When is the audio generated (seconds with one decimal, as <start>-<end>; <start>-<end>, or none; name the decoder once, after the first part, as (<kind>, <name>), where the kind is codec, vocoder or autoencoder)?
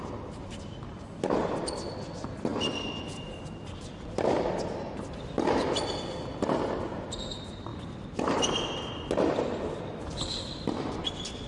none